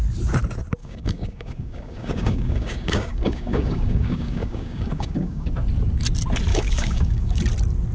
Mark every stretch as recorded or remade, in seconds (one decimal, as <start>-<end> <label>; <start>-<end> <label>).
0.0-0.8 recorded; 0.8-5.5 remade; 5.5-6.5 recorded; 6.5-7.4 remade; 7.4-7.9 recorded

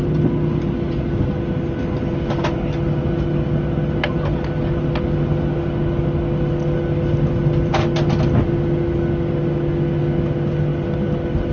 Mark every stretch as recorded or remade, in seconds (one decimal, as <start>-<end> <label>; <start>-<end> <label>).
0.0-11.5 recorded

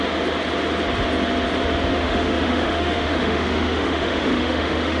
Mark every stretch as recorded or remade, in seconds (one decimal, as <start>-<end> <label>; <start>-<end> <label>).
0.0-1.9 recorded; 1.9-5.0 remade